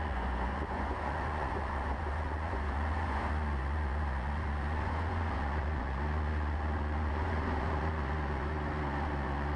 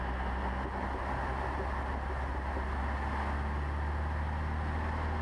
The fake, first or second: first